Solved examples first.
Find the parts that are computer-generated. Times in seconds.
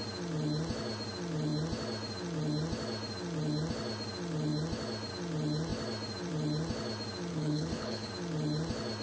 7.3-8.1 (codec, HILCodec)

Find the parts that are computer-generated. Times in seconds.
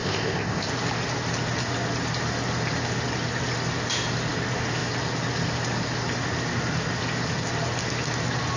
0.0-0.7 (codec, ZipCodec)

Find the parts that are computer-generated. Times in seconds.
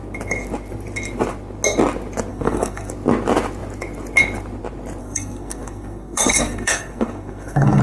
2.3-2.9 (codec, SNAC); 5.0-7.8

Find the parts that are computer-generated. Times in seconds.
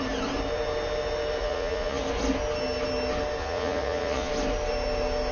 1.4-2.0 (vocoder, Vocos); 3.4-4.3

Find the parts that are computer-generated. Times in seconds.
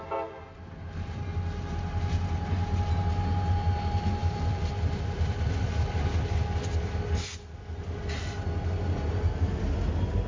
4.2-5.6 (vocoder, BigVGAN v2)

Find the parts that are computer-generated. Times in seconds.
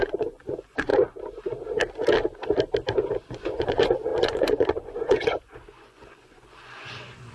0.0-0.9 (vocoder, Vocos); 3.3-7.3